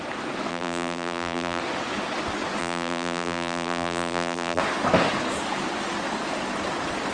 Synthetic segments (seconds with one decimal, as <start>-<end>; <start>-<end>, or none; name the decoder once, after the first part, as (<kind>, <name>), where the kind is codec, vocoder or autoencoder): 0.5-1.6 (vocoder, BigVGAN v2); 2.6-4.6